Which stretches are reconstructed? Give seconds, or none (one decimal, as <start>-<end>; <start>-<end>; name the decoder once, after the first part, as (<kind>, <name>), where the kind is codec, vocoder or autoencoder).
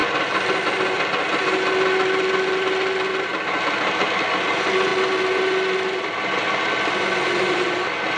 none